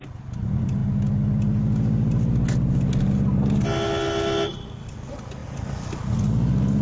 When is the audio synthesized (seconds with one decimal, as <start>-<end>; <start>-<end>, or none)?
none

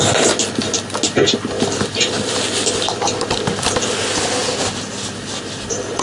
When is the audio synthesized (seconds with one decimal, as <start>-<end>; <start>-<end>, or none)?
none

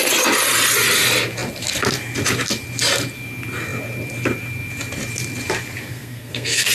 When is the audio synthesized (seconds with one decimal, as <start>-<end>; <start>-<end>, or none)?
5.9-6.7

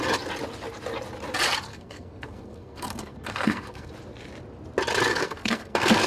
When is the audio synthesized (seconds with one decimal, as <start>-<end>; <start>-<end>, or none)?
1.7-3.9; 5.1-6.1

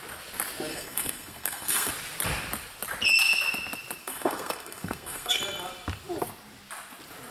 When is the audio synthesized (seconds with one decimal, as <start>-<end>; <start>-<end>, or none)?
0.7-1.9; 4.0-5.4